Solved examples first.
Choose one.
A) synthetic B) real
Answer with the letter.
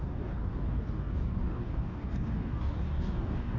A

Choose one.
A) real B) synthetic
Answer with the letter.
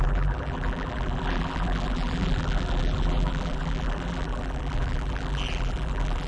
B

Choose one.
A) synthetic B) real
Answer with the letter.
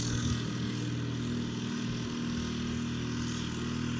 B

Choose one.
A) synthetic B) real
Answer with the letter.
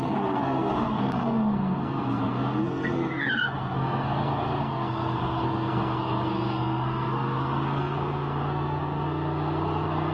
A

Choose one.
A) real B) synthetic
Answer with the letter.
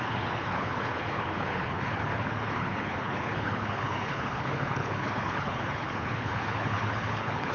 B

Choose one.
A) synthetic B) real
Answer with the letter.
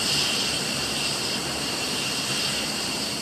A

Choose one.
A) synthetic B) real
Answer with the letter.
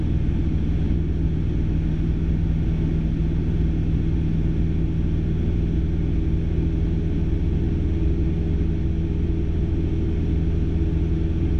B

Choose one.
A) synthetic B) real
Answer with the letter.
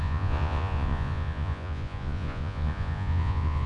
A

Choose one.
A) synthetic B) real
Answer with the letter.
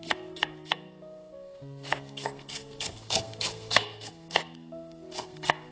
A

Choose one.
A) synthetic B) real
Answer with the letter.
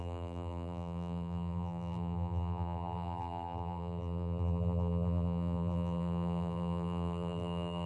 A